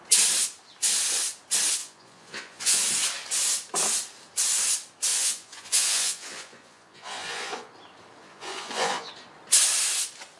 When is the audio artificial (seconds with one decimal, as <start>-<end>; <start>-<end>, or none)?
1.8-2.8; 5.1-7.7; 8.2-9.1